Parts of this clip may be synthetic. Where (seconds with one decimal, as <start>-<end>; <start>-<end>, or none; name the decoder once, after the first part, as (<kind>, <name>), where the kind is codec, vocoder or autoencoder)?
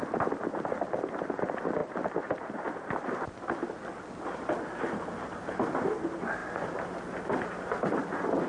none